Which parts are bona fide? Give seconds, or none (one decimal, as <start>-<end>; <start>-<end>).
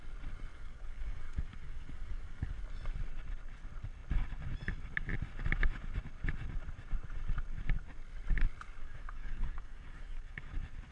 0.0-0.5; 2.6-8.8; 10.5-10.9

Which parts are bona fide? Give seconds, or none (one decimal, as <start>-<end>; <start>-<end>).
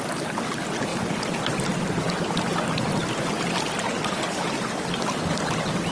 0.0-5.9